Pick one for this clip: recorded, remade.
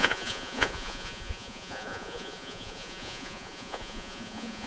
remade